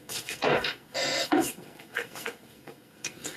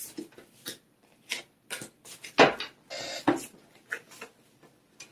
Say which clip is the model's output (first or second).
first